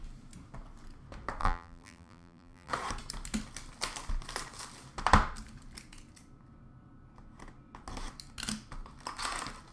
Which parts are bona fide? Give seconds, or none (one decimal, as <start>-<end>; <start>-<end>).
0.0-1.4; 2.7-9.7